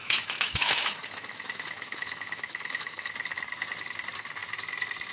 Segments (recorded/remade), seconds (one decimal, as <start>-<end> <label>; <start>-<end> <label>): 0.0-3.1 remade; 3.1-5.1 recorded